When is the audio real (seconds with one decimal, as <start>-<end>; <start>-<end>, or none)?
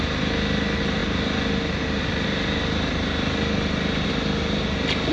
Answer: 0.0-5.1